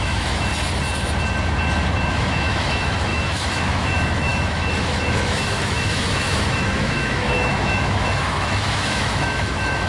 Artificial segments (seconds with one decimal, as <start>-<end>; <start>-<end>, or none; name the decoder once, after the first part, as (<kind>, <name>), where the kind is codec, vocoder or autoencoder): 0.0-0.5 (autoencoder, DAC-VAE); 2.1-9.9